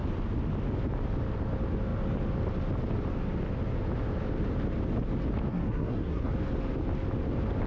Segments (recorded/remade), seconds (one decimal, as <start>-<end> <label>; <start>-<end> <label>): 0.0-5.5 recorded; 5.5-6.3 remade; 6.3-7.7 recorded